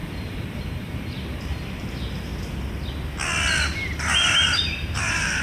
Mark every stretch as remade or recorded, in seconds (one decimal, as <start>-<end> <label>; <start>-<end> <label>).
0.0-2.3 remade; 2.3-3.9 recorded; 3.9-5.4 remade

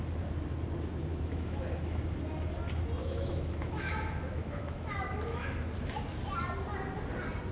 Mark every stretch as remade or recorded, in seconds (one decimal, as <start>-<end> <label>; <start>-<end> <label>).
0.0-1.1 recorded; 1.1-2.0 remade; 2.0-3.0 recorded; 3.0-5.5 remade; 5.5-7.5 recorded